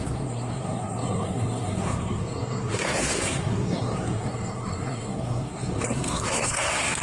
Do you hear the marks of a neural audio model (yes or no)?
yes